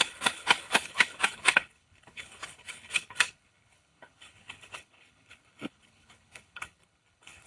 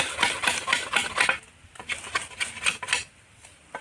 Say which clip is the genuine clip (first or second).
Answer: second